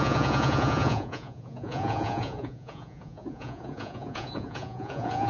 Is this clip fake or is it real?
fake